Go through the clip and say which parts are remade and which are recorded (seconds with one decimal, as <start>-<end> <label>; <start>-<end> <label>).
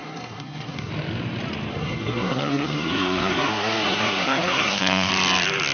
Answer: 0.0-0.9 remade; 0.9-1.7 recorded; 1.7-5.1 remade; 5.1-5.7 recorded